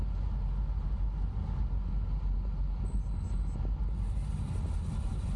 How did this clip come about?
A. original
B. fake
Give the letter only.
A